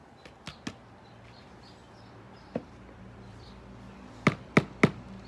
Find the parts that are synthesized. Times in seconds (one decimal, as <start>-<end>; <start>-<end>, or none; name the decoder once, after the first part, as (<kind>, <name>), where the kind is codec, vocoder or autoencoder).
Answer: 1.8-3.5 (vocoder, BigVGAN v2)